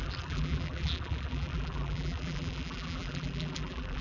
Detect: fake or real fake